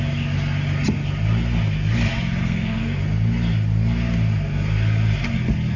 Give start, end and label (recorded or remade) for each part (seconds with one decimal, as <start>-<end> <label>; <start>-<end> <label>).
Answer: 0.0-2.4 recorded; 2.4-3.0 remade; 3.0-5.8 recorded